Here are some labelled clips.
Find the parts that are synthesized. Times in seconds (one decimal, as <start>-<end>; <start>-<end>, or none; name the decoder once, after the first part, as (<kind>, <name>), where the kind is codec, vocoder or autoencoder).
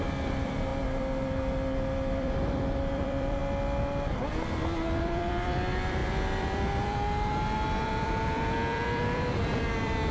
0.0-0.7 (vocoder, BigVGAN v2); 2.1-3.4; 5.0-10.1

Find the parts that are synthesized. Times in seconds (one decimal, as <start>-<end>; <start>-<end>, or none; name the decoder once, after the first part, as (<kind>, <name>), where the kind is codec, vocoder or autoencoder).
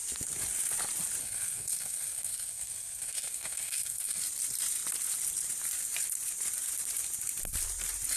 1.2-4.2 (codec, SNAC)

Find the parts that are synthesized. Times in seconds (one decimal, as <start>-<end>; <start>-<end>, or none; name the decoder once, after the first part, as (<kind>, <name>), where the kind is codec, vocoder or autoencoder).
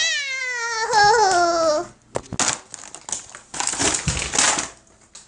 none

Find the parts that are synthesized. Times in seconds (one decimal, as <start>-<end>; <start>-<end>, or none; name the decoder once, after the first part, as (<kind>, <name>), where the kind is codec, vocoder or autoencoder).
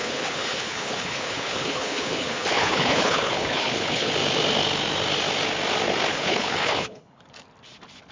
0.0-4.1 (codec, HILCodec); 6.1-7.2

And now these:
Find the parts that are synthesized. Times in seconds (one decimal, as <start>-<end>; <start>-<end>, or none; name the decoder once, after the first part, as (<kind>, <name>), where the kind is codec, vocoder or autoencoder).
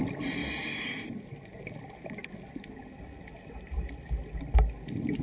none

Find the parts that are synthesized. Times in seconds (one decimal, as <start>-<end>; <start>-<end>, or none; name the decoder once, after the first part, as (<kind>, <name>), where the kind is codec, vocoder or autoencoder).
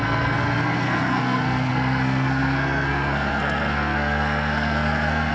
0.0-5.3 (codec, SNAC)